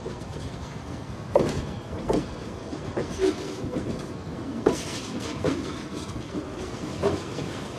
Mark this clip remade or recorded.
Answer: remade